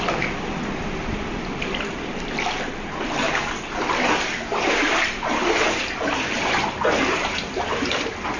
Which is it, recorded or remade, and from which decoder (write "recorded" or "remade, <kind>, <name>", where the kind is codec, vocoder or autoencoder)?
remade, vocoder, BigVGAN v2